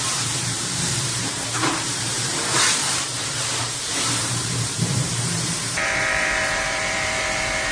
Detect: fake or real fake